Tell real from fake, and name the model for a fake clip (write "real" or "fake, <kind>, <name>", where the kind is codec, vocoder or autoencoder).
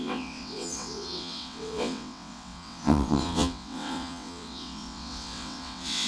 fake, vocoder, WaveNeXt